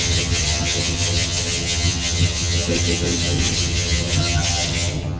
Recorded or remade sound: remade